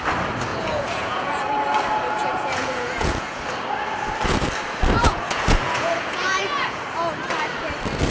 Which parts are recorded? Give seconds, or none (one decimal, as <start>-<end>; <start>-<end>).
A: 0.0-0.5; 1.4-2.2; 3.4-5.0; 6.8-8.1